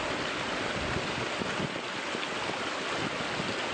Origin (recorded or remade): recorded